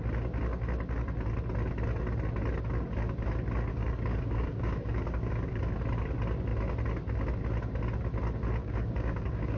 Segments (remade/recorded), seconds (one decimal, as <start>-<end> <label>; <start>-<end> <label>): 0.0-3.7 recorded; 3.7-5.6 remade; 5.6-8.6 recorded; 8.6-9.6 remade